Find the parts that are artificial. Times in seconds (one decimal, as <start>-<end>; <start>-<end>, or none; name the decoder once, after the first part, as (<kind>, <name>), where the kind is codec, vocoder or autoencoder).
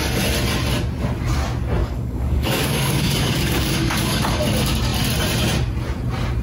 1.8-4.4 (codec, DAC)